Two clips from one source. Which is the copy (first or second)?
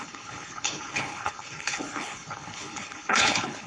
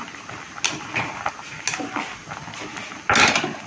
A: first